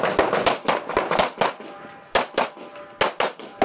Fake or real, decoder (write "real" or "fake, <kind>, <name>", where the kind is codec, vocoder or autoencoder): real